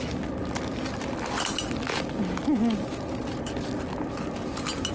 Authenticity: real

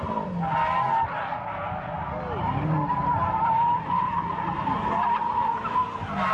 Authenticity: real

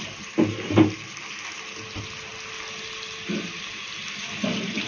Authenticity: real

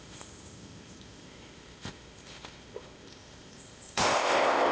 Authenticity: fake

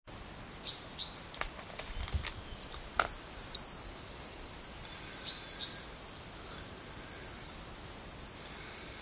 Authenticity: real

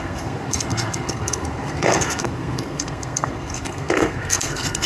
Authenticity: fake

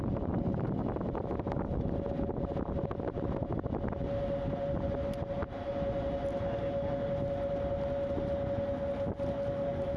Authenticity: real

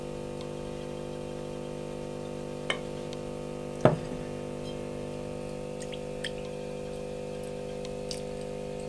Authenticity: real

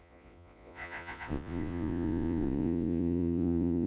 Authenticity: fake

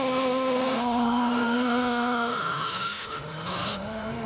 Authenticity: fake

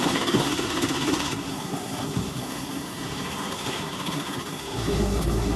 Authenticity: fake